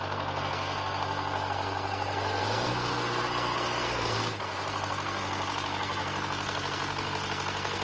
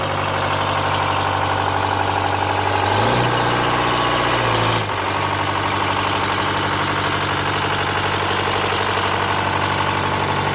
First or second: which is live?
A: second